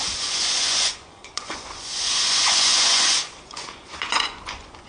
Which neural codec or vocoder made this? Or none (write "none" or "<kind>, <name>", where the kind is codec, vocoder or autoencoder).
vocoder, Vocos